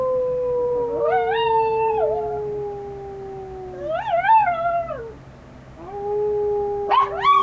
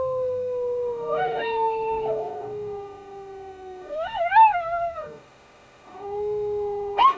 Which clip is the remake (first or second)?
second